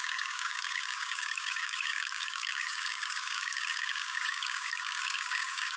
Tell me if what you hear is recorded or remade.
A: remade